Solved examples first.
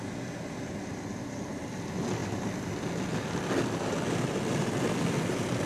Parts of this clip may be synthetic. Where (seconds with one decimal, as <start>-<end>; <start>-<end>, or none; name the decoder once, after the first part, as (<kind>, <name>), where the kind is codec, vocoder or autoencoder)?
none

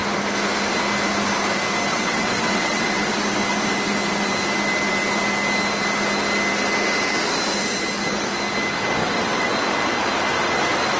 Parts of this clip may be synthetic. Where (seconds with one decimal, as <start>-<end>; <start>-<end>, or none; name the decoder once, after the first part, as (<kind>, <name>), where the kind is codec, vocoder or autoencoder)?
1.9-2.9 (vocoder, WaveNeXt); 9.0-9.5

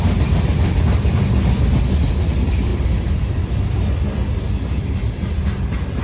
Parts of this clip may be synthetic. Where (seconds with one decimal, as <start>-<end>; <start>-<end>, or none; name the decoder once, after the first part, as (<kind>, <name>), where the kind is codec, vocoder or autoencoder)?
none